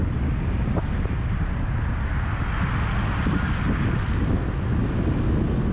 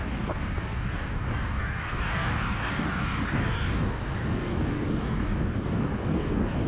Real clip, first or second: first